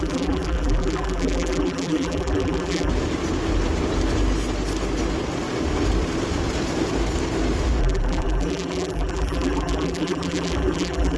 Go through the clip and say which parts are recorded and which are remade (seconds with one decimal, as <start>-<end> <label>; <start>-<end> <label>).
0.0-2.9 remade; 2.9-7.8 recorded; 7.8-11.2 remade